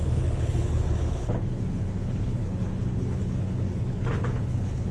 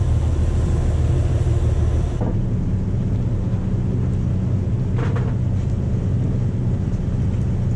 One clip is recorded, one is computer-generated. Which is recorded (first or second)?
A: second